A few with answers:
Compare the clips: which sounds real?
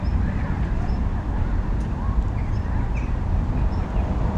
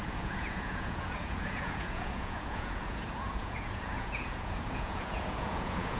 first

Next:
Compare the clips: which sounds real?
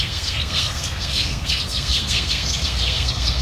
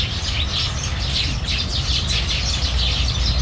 second